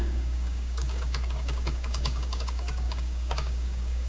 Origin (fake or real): fake